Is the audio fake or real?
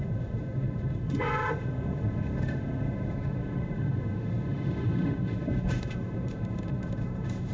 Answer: fake